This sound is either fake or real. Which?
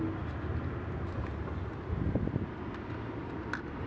real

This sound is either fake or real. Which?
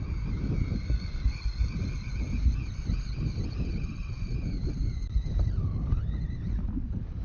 real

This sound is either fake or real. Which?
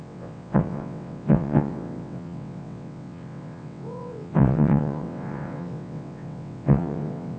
fake